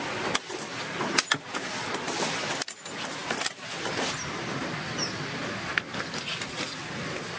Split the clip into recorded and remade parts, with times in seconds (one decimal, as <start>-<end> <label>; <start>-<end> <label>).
0.0-7.4 recorded